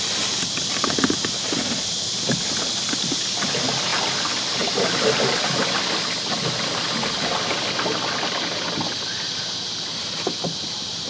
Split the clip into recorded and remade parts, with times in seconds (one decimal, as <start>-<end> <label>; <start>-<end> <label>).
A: 0.0-11.1 recorded